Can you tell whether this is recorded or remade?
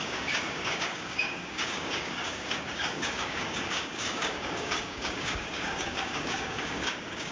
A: remade